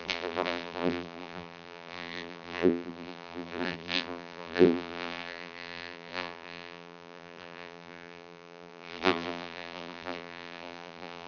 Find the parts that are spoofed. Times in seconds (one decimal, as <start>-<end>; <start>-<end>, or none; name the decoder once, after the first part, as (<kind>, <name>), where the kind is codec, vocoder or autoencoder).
0.0-11.3 (vocoder, BigVGAN v2)